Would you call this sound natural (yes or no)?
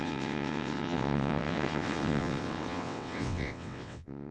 no